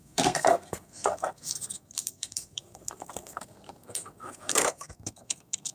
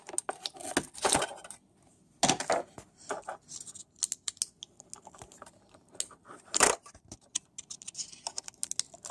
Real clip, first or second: second